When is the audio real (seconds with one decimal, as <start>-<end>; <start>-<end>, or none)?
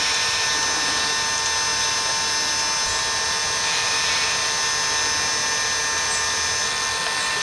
0.0-7.4